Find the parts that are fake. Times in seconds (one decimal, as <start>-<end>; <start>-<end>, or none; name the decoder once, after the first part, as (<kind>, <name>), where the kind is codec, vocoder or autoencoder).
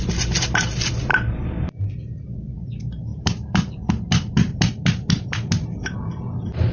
3.1-3.9 (vocoder, BigVGAN v2)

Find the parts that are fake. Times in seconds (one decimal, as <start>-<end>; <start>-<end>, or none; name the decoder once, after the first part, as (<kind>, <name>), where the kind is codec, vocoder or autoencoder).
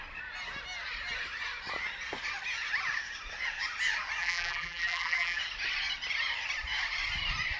4.2-5.4 (vocoder, BigVGAN v2)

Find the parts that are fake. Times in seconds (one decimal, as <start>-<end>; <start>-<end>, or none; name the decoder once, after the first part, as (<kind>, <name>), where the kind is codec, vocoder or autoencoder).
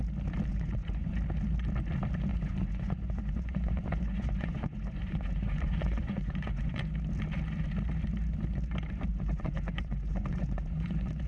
0.5-1.1 (vocoder, Vocos); 2.3-6.9; 9.1-11.3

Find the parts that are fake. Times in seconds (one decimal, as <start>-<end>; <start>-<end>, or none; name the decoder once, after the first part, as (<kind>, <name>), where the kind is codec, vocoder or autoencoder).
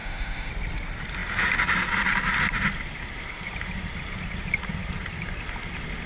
0.0-0.5 (autoencoder, DAC-VAE)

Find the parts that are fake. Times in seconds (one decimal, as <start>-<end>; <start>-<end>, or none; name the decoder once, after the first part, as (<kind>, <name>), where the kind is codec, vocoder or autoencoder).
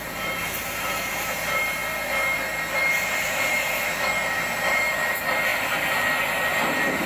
0.0-1.8 (vocoder, BigVGAN v2); 3.2-5.5; 6.5-7.1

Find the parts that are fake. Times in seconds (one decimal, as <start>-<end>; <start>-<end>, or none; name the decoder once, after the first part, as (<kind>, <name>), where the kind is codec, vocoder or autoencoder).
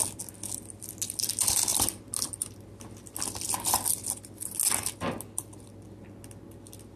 none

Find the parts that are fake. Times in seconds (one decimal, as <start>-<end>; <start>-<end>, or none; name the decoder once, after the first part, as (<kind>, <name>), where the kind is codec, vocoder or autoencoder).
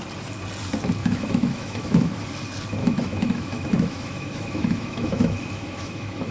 1.0-2.2 (autoencoder, DAC-VAE); 2.8-6.3